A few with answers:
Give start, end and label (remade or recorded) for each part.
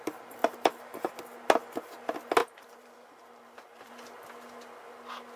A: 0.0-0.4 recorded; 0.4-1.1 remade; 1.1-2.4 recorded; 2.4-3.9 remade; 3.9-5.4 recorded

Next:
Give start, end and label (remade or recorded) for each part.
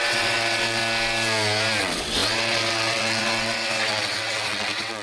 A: 0.0-0.8 remade; 0.8-1.8 recorded; 1.8-5.0 remade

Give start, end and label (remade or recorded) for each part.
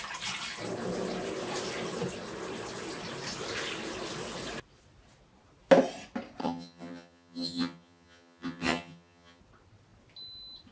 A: 0.0-6.4 recorded; 6.4-9.4 remade; 9.4-10.7 recorded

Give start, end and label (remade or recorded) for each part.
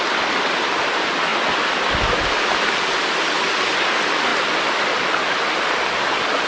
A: 0.0-6.5 recorded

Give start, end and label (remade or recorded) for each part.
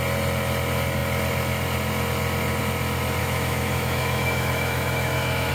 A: 0.0-3.2 recorded; 3.2-5.5 remade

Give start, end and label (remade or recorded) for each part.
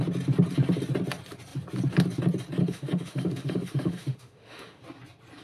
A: 0.0-2.6 recorded; 2.6-4.8 remade; 4.8-5.4 recorded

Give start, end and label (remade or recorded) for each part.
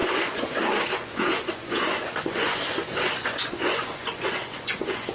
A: 0.0-5.1 remade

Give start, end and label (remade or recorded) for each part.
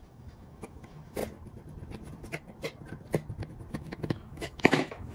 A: 0.0-1.2 remade; 1.2-3.7 recorded; 3.7-5.1 remade